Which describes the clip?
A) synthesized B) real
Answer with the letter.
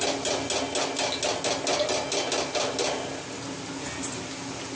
B